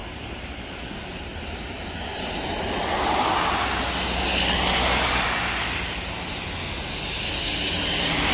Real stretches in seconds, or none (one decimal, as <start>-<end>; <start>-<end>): 0.0-8.3